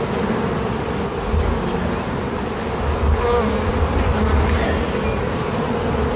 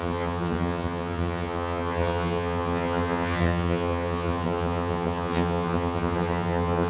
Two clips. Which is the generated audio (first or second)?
second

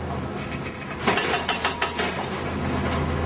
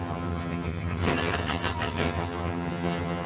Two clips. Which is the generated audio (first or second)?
second